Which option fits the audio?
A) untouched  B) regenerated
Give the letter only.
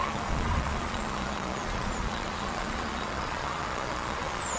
B